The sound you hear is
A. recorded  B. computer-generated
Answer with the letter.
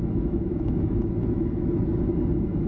B